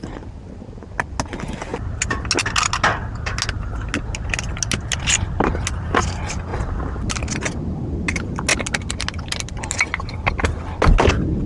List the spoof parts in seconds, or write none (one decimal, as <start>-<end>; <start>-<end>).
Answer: none